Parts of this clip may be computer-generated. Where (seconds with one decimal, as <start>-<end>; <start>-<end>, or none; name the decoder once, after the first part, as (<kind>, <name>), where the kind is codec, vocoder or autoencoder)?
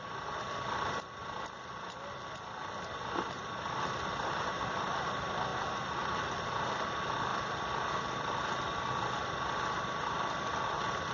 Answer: 0.0-7.3 (vocoder, BigVGAN v2); 8.0-11.1